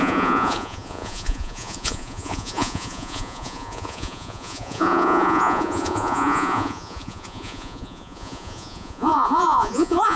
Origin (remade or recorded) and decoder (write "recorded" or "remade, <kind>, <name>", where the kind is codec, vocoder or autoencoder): remade, vocoder, Vocos